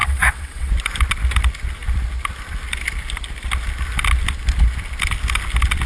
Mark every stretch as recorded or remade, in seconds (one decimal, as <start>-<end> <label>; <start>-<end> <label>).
0.0-0.7 remade; 0.7-5.9 recorded